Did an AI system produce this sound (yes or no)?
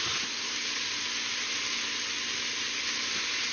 no